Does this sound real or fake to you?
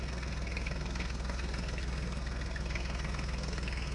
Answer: fake